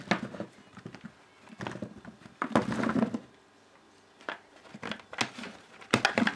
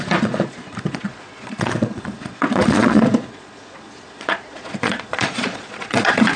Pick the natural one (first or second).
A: first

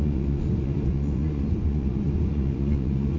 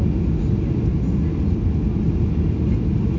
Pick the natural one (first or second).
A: second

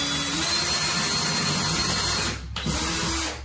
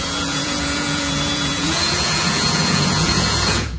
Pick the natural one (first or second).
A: first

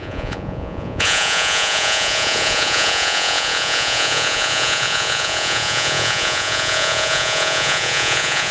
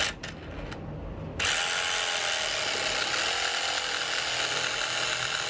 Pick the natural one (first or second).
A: second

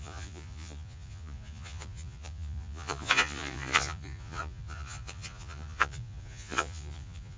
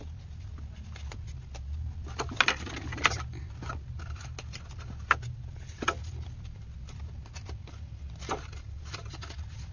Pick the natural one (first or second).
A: second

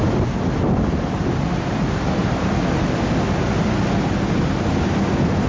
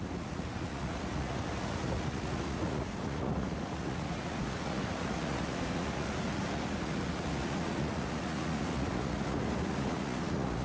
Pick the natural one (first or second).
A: first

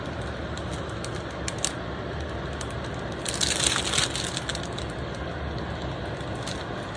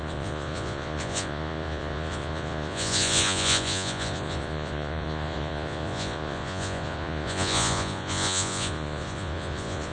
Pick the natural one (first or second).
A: first